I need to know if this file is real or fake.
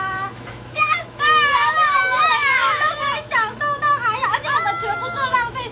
fake